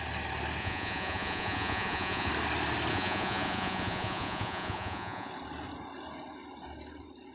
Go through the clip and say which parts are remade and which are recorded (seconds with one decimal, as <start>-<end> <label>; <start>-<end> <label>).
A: 0.0-0.6 recorded; 0.6-2.3 remade; 2.3-2.9 recorded; 2.9-5.3 remade; 5.3-7.3 recorded